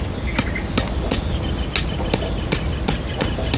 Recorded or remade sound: recorded